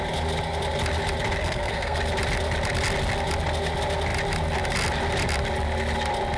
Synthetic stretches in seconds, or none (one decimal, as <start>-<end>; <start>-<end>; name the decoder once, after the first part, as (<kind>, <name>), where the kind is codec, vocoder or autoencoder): 1.4-2.0 (codec, SNAC)